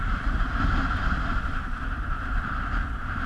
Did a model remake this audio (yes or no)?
no